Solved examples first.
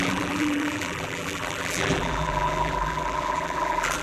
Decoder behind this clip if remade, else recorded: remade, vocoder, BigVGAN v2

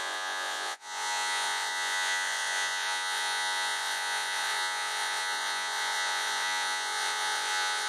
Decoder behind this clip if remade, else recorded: remade, vocoder, Vocos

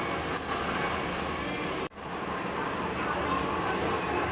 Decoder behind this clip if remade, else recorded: recorded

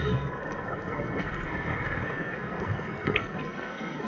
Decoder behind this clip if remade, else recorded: remade, codec, SNAC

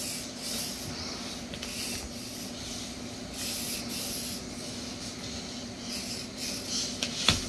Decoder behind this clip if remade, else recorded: recorded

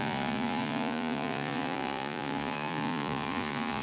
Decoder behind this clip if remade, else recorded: remade, vocoder, Vocos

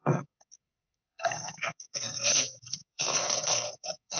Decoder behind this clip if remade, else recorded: remade, codec, SNAC